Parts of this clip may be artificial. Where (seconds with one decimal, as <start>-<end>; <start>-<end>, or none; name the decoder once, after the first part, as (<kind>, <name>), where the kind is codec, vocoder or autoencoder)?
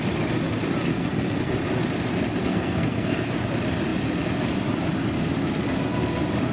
0.9-1.5 (codec, SNAC); 2.4-3.3